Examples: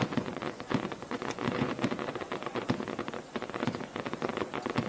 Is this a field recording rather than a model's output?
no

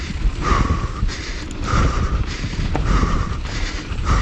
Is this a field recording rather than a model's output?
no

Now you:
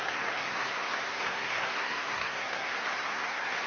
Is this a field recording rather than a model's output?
no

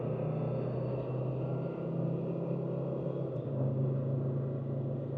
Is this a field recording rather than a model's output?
yes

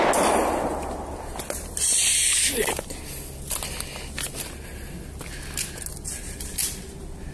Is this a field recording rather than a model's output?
yes